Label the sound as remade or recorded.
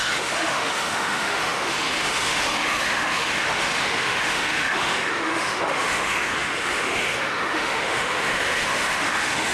remade